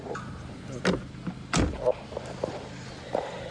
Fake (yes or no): no